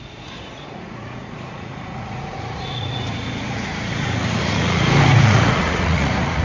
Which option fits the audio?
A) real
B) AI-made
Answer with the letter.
B